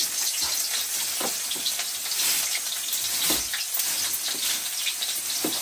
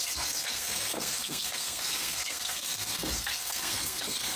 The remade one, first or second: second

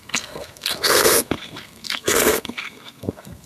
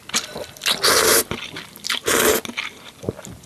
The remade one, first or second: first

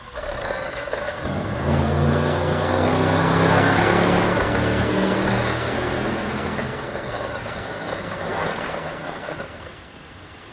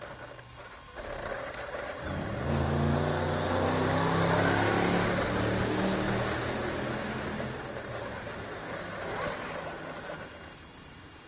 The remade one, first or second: first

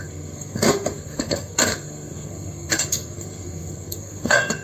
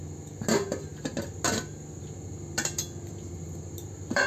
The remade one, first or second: first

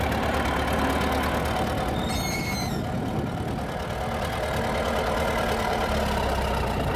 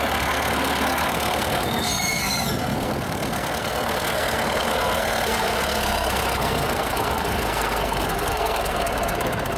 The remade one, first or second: second